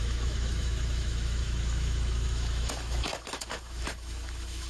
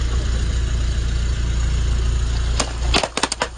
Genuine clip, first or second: second